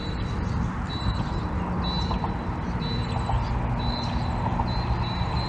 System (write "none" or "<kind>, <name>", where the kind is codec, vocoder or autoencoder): none